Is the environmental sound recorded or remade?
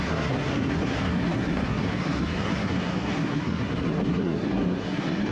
remade